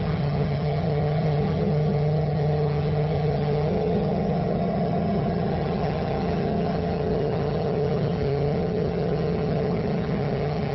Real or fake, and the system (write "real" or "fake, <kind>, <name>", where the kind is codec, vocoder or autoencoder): fake, vocoder, HiFi-GAN